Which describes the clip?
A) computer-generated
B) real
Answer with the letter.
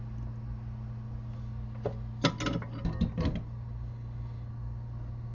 B